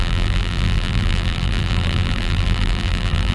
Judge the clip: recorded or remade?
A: remade